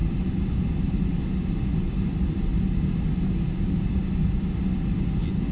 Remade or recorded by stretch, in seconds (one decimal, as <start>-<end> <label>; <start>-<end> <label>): 0.0-1.2 remade; 1.2-5.5 recorded